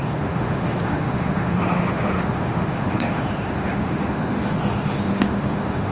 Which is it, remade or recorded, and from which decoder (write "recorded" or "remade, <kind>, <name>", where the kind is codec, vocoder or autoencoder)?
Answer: remade, autoencoder, DAC-VAE